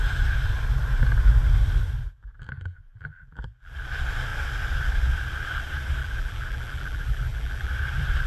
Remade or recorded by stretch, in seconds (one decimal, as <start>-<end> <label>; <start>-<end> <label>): 0.0-2.9 recorded; 2.9-3.7 remade; 3.7-6.0 recorded; 6.0-7.7 remade; 7.7-8.3 recorded